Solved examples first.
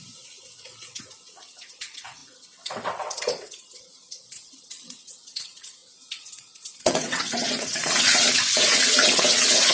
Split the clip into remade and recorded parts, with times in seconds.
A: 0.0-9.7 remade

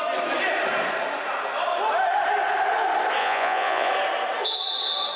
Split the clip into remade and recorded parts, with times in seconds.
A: 0.0-3.2 recorded; 3.2-3.9 remade; 3.9-5.2 recorded

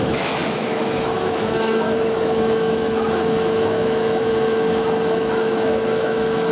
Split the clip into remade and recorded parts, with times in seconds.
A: 0.0-6.5 remade

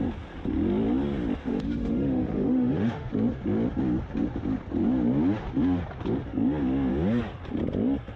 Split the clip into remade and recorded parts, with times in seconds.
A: 0.0-1.4 recorded; 1.4-3.1 remade; 3.1-8.2 recorded